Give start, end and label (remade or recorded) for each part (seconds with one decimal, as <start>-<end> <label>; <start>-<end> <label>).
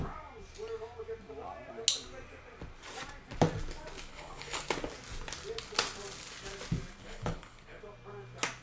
0.0-4.1 recorded; 4.1-4.6 remade; 4.6-7.0 recorded; 7.0-7.8 remade; 7.8-8.6 recorded